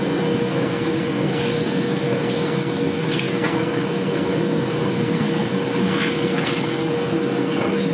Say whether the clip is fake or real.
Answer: fake